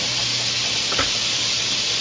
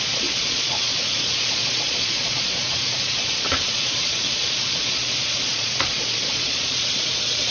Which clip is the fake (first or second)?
second